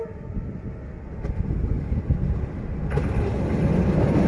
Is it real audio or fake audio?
real